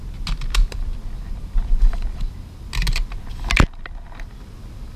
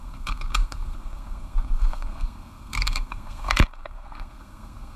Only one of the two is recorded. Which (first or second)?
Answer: first